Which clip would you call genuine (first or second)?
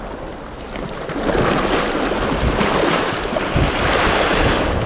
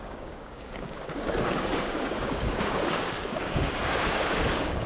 first